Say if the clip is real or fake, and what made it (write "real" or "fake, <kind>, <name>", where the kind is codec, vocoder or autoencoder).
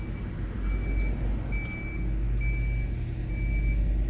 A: real